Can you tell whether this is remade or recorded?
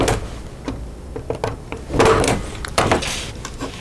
recorded